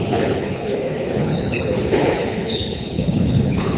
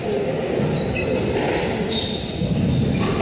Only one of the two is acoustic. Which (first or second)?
second